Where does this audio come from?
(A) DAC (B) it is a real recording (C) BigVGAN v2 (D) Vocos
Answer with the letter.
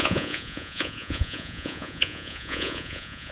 D